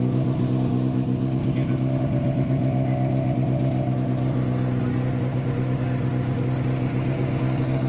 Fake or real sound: real